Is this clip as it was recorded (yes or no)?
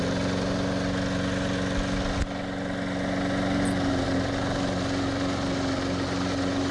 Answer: yes